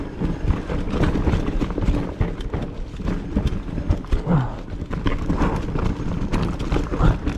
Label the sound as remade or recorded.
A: recorded